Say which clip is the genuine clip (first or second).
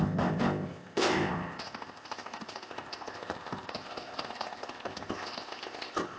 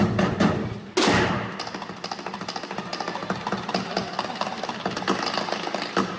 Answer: second